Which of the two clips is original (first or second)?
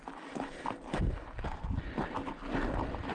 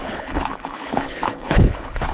first